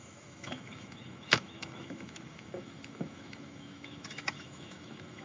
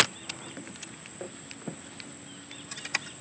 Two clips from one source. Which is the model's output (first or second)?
first